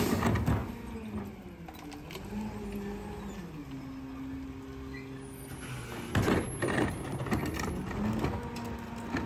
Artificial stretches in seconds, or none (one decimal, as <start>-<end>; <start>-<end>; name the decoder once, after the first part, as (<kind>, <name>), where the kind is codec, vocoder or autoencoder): none